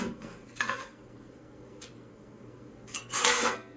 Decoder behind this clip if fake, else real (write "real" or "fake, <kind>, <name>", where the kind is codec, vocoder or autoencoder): fake, codec, SNAC